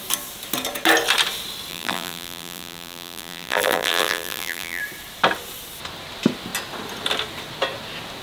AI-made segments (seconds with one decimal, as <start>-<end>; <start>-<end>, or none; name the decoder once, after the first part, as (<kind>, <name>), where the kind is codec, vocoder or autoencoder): 1.7-4.8 (vocoder, BigVGAN v2)